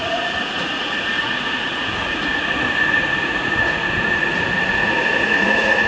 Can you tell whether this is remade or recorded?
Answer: remade